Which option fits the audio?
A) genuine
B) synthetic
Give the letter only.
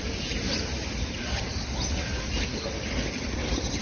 A